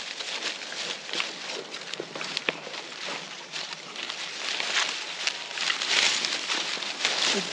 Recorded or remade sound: recorded